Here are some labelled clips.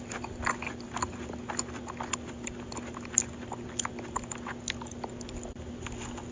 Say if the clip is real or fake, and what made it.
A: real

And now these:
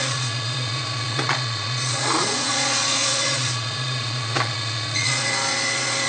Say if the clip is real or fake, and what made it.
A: fake, vocoder, Vocos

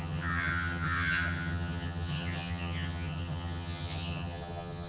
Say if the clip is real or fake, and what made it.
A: fake, vocoder, HiFi-GAN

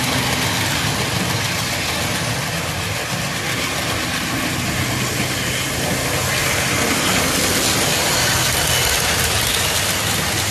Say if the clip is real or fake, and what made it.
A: real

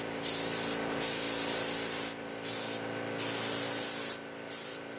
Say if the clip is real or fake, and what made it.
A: real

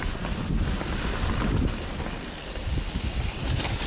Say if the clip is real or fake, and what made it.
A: real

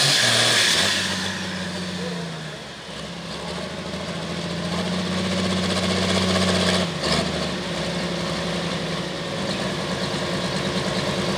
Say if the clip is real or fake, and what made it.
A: real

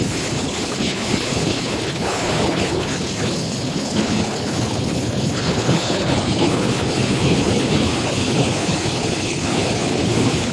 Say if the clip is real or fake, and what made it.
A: fake, codec, HILCodec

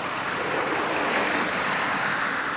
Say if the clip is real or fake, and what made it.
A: fake, vocoder, BigVGAN v2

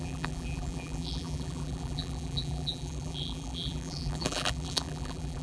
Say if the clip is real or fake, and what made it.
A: fake, vocoder, BigVGAN v2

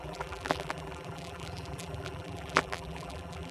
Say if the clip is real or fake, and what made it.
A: fake, vocoder, BigVGAN v2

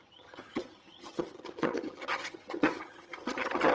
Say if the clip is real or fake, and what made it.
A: fake, vocoder, HiFi-GAN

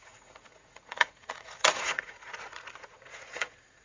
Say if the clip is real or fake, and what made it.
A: fake, vocoder, Vocos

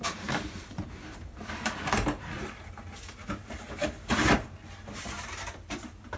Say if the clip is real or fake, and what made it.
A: fake, vocoder, BigVGAN v2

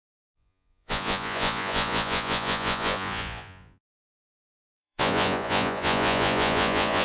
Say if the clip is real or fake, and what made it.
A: fake, vocoder, Vocos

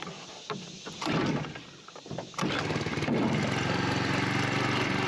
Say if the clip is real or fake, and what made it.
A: real